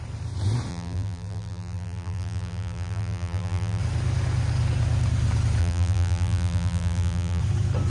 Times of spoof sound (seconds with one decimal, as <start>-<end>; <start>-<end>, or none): 0.7-3.8; 5.6-7.4